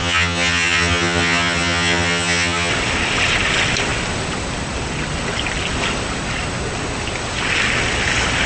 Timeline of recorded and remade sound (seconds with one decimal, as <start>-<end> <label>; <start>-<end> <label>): 0.0-2.7 remade; 2.7-8.5 recorded